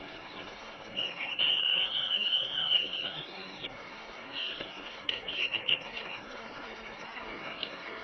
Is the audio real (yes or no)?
no